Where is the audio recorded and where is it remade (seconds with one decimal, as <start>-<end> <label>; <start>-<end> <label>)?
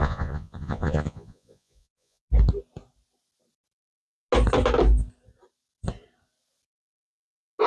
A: 0.0-2.2 remade; 2.2-7.7 recorded